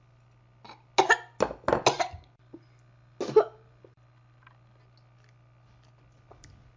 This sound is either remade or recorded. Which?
recorded